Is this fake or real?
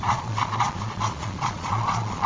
fake